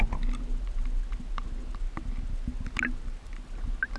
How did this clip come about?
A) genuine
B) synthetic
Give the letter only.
A